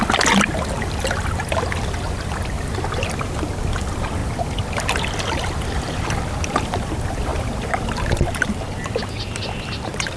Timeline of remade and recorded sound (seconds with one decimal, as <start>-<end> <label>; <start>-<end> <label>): 0.0-10.2 recorded